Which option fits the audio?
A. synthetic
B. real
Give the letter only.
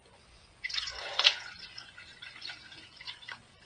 A